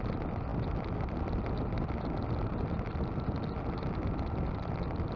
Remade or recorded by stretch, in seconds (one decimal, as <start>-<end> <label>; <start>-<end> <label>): 0.0-5.2 recorded